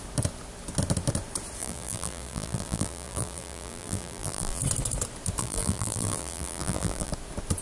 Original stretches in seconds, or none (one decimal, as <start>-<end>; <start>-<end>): 0.0-1.6; 4.6-5.4; 7.1-7.6